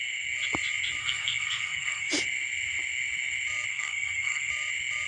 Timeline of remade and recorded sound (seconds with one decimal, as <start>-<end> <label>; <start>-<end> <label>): 0.0-1.0 recorded; 1.0-2.1 remade; 2.1-3.7 recorded; 3.7-4.5 remade; 4.5-5.1 recorded